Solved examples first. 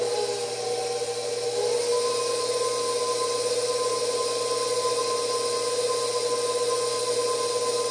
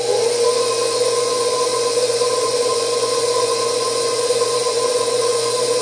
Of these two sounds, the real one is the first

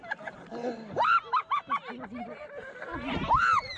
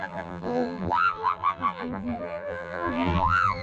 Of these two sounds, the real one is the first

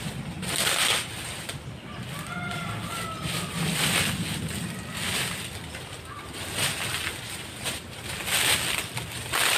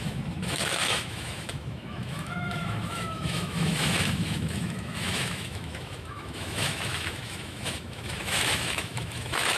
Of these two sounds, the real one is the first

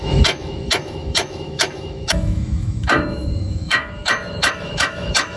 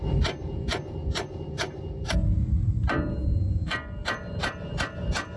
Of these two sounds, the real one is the second